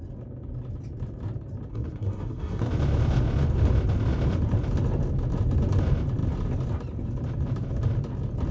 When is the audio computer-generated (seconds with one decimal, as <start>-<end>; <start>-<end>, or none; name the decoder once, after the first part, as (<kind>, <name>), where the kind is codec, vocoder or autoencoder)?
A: 1.7-2.7 (codec, SNAC)